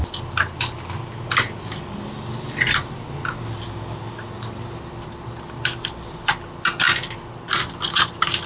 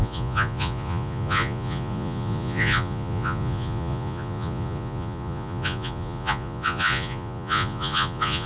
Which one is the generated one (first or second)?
second